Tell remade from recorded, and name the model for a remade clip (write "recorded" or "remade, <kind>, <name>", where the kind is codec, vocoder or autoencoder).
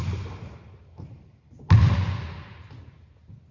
recorded